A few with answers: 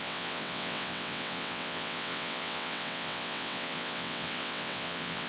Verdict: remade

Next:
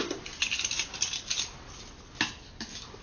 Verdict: recorded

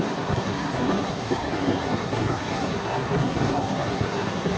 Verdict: remade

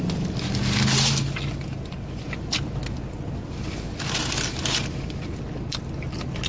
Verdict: recorded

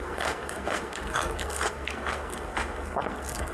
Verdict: remade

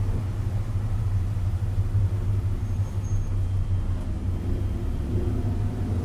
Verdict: recorded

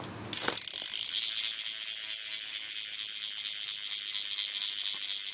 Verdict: recorded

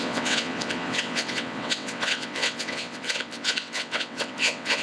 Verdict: remade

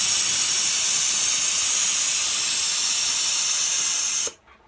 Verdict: recorded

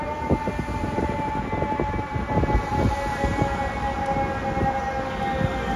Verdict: recorded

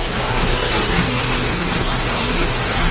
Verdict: remade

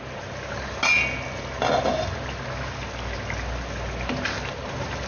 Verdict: recorded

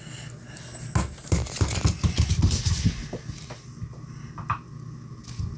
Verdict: recorded